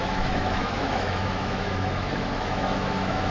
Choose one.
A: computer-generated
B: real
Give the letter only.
A